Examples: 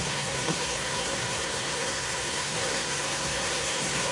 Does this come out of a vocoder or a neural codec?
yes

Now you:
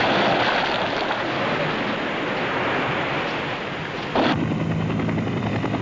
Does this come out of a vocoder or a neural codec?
no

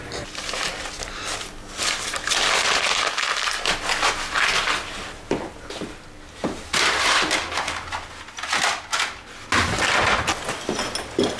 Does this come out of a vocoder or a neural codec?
no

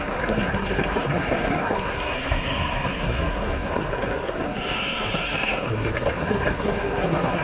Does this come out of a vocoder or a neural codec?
yes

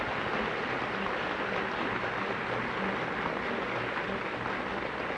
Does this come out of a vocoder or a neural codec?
no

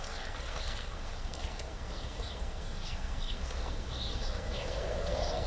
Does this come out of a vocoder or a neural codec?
yes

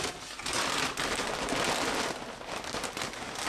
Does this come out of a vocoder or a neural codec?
no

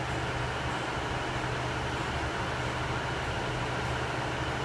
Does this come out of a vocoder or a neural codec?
no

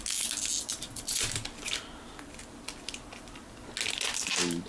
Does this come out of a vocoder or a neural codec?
no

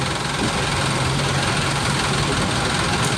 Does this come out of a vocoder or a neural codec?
no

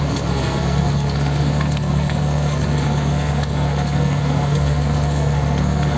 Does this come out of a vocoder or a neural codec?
yes